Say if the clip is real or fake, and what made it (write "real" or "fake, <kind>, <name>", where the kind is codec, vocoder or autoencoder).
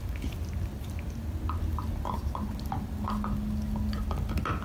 real